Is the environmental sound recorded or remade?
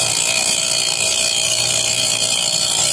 remade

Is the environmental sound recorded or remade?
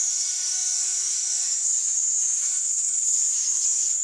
remade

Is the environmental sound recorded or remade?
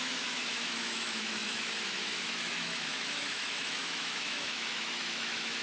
remade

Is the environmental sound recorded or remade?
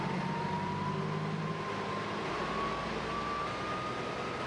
recorded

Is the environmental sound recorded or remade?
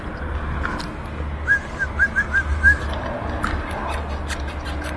recorded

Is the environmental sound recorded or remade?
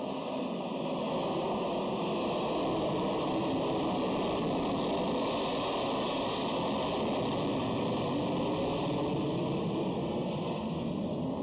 recorded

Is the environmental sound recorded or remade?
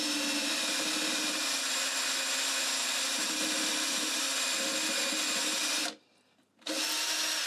recorded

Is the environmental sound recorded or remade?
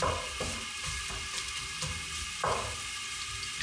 recorded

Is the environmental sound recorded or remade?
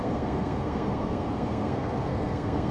remade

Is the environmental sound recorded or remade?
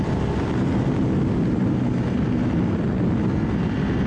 recorded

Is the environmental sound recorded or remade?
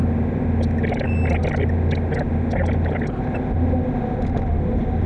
recorded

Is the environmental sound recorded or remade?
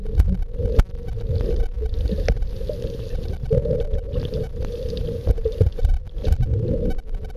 recorded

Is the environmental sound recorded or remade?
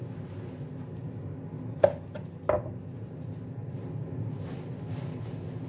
recorded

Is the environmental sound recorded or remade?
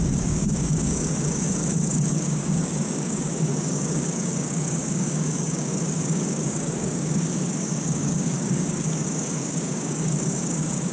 remade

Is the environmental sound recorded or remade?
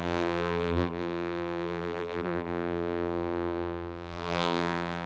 remade